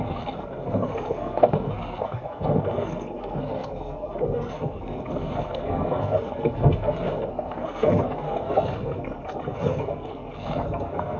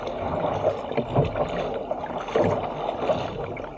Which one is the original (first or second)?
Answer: second